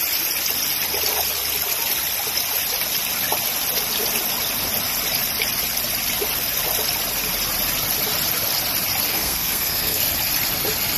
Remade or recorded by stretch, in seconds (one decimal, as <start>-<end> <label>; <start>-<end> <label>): 0.0-9.1 recorded; 9.1-10.0 remade; 10.0-11.0 recorded